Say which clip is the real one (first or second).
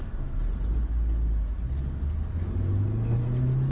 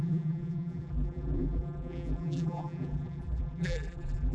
first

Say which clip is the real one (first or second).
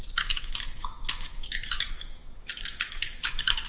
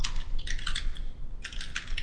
second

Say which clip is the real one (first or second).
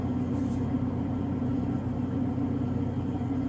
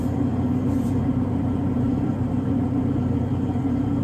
first